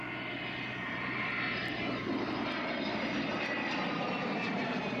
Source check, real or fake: fake